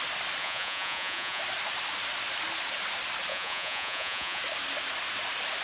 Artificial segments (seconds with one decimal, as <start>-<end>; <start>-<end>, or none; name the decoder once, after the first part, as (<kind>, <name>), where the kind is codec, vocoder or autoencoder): 0.4-1.4 (vocoder, Vocos); 3.3-4.4

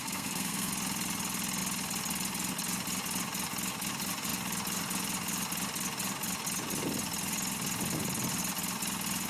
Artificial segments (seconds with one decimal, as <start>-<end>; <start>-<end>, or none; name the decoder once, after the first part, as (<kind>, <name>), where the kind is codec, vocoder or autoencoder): 0.0-0.7 (codec, SNAC)

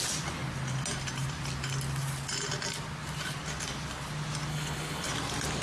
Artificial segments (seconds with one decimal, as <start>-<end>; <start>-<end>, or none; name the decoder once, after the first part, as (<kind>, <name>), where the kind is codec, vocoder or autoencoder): 4.5-5.1 (codec, HILCodec)

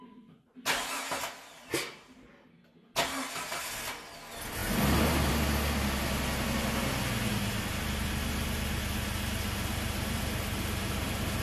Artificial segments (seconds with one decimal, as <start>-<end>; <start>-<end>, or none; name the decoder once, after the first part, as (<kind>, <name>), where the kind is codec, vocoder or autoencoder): none

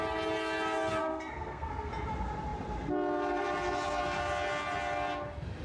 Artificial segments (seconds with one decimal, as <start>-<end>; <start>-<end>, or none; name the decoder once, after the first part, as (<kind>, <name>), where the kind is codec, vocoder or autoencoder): 1.0-1.9 (codec, SNAC)

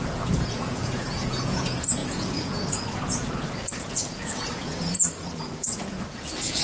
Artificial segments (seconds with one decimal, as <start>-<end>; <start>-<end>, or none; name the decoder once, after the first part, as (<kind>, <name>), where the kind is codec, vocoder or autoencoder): 0.0-6.6 (vocoder, Vocos)

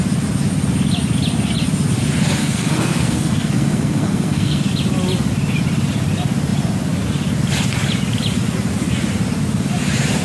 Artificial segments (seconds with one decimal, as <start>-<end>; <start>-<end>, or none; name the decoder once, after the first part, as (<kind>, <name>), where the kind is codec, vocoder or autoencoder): 2.4-4.7 (codec, SNAC)